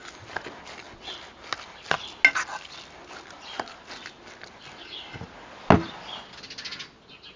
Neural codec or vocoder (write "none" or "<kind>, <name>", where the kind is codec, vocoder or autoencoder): none